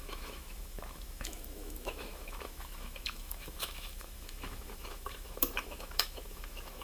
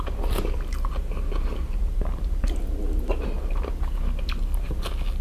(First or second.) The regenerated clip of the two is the first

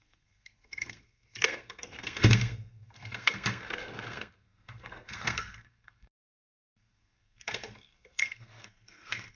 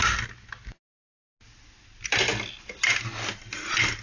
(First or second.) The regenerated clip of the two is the first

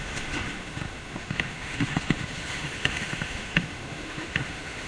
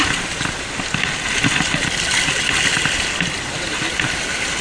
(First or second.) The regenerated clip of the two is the first